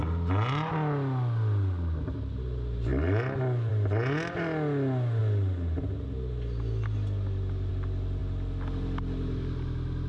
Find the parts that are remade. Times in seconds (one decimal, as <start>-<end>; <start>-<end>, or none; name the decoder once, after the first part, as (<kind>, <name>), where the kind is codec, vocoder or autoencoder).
none